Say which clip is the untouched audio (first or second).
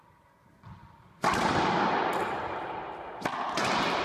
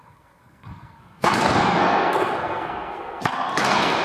first